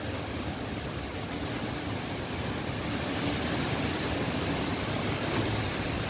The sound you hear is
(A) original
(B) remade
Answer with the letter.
A